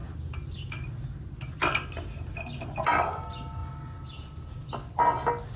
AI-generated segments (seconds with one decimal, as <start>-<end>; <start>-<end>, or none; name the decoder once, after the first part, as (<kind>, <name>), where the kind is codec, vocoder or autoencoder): none